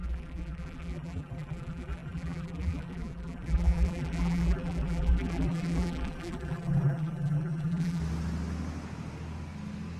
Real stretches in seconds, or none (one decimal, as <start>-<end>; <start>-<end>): 8.0-10.0